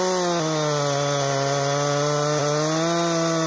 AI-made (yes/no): no